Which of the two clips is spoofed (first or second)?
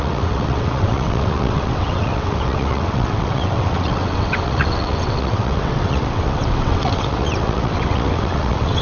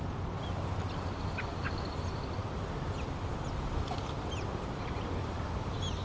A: first